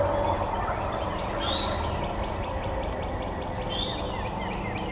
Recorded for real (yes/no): yes